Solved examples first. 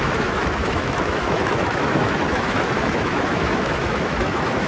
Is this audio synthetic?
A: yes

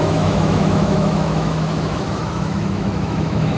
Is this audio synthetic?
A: yes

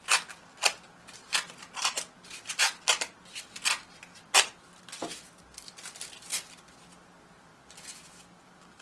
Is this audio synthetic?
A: no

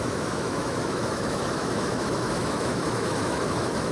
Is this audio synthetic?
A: yes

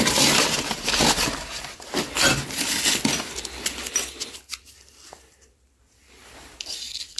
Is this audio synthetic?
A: no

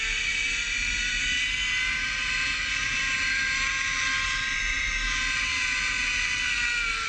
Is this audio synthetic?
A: no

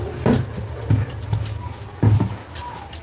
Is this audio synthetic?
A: no